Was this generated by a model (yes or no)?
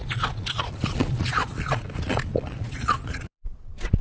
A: yes